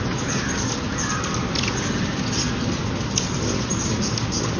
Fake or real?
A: real